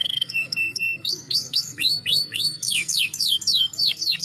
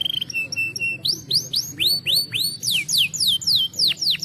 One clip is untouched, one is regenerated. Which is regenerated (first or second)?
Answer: first